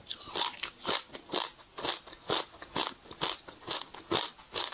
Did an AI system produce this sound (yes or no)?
no